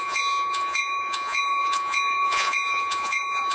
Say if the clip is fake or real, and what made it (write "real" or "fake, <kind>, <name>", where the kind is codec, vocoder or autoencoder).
fake, vocoder, Vocos